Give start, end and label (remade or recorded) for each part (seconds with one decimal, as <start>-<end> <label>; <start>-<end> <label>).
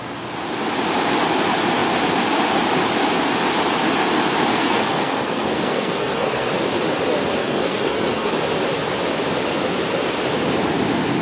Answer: 0.0-4.5 recorded; 4.5-6.5 remade; 6.5-7.4 recorded; 7.4-8.3 remade; 8.3-11.2 recorded